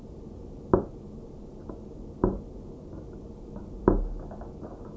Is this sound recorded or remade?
recorded